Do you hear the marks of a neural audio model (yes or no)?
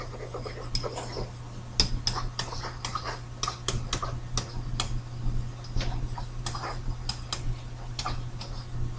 no